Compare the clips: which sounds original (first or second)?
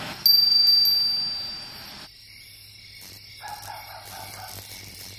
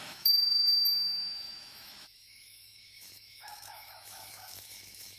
first